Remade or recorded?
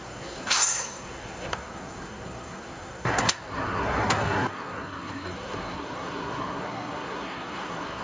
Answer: remade